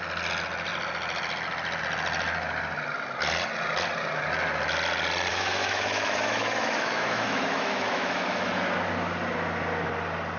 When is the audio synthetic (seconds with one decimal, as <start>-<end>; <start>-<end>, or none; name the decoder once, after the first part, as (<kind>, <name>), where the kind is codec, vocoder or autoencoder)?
5.3-8.5 (autoencoder, DAC-VAE)